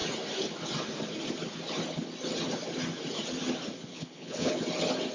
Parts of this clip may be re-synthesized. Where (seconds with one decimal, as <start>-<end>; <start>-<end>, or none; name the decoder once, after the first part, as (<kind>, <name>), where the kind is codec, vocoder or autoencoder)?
3.9-4.6 (codec, HILCodec)